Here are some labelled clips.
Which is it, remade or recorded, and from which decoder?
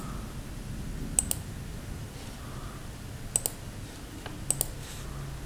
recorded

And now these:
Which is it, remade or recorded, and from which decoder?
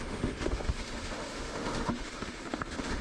remade, autoencoder, DAC-VAE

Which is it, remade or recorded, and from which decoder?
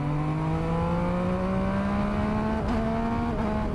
recorded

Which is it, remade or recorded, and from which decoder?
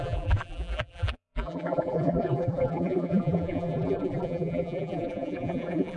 remade, vocoder, BigVGAN v2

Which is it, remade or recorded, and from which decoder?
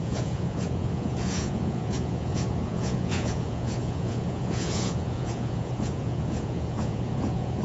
remade, vocoder, Vocos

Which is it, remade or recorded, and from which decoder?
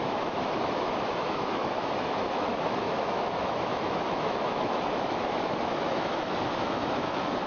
remade, autoencoder, DAC-VAE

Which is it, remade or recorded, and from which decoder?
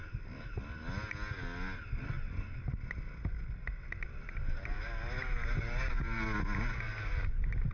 recorded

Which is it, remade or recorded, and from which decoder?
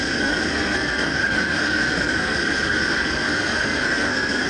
remade, codec, SNAC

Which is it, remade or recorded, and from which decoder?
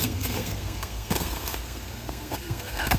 remade, codec, SNAC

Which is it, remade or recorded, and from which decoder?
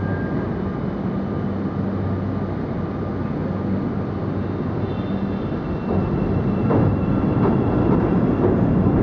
recorded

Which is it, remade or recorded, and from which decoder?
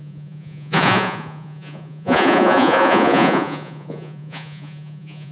remade, vocoder, Vocos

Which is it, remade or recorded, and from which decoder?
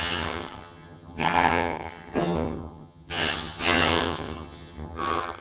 remade, vocoder, HiFi-GAN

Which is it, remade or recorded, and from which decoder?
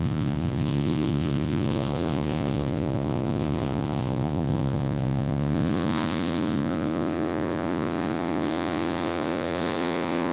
remade, vocoder, Vocos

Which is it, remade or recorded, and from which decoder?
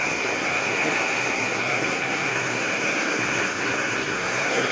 remade, codec, SNAC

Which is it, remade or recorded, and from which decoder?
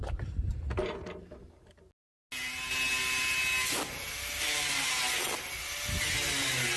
recorded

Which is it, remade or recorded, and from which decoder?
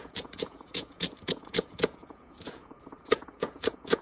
remade, vocoder, Vocos